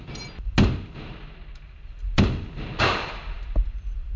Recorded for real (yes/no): yes